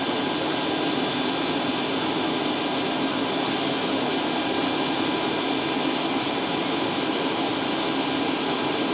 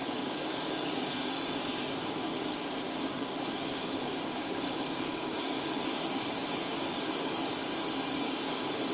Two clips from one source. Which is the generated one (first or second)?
second